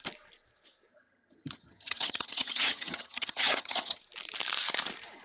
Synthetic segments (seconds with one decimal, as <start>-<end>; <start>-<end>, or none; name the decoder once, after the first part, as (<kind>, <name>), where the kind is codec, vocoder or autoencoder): 0.9-4.0 (vocoder, HiFi-GAN)